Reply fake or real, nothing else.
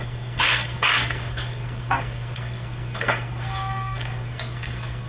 fake